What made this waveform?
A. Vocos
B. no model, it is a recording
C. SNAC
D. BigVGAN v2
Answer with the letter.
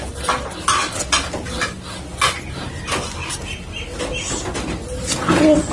B